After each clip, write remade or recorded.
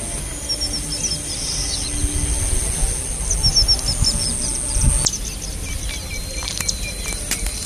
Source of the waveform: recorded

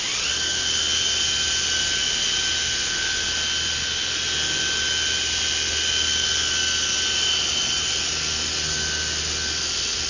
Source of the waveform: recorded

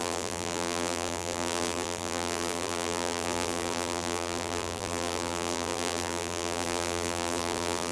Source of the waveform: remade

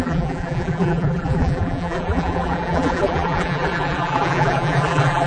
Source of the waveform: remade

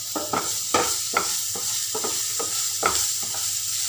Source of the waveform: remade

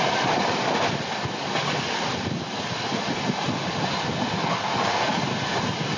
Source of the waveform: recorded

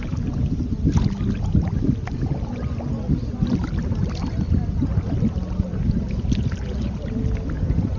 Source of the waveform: recorded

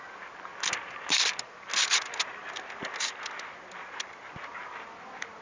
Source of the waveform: recorded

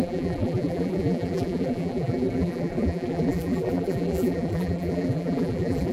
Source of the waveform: remade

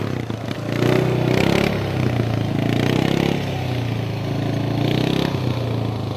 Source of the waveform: recorded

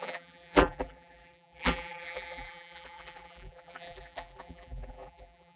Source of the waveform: remade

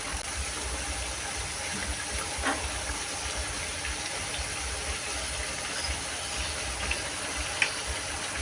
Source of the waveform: recorded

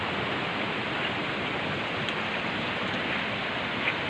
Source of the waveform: recorded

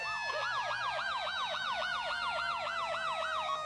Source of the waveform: remade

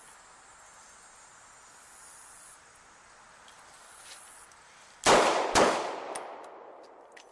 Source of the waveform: recorded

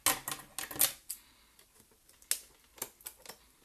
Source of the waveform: recorded